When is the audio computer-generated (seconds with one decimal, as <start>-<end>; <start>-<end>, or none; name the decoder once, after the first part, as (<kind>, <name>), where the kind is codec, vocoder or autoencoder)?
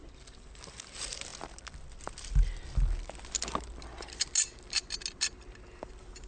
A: none